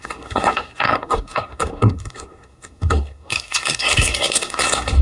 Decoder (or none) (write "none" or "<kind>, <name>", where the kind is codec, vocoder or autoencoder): codec, SNAC